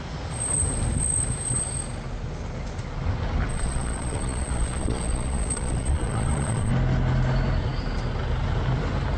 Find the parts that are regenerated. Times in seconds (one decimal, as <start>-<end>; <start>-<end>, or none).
3.5-6.7